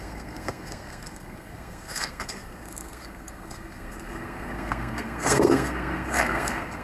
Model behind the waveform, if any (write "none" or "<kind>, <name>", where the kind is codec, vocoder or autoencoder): codec, SNAC